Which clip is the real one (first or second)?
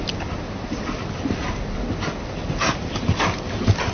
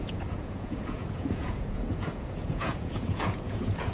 first